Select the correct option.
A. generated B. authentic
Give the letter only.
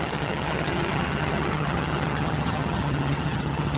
A